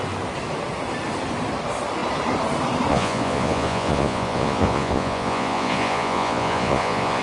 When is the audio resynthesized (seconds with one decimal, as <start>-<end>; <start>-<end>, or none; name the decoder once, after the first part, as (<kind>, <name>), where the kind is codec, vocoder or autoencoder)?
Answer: 2.9-7.2 (vocoder, Vocos)